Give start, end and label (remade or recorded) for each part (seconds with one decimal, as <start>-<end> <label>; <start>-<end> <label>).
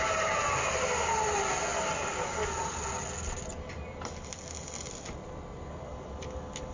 0.0-6.7 recorded